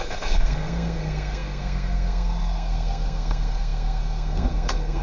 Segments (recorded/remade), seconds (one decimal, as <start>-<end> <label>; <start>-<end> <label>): 0.0-5.0 remade